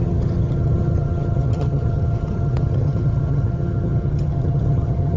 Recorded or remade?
remade